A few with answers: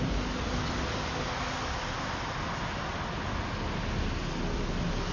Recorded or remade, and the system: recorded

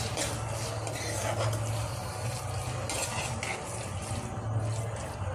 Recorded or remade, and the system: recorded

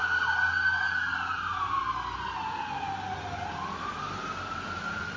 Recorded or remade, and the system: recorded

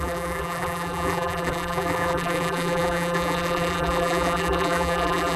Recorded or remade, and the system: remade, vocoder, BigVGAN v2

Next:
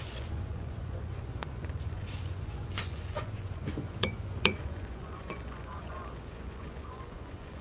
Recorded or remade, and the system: remade, vocoder, Vocos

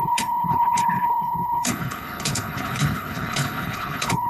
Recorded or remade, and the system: remade, codec, HILCodec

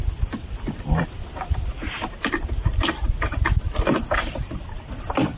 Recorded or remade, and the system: recorded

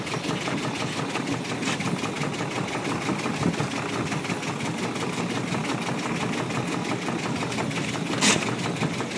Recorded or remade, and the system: recorded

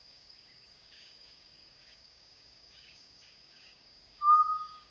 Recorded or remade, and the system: remade, codec, DAC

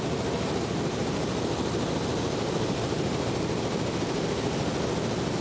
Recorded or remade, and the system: recorded